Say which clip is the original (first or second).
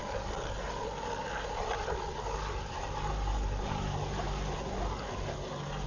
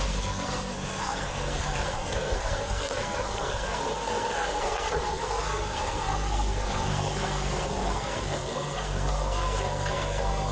first